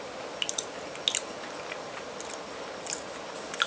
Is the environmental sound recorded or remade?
recorded